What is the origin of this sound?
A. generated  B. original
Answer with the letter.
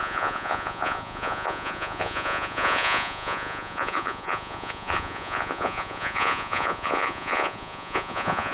A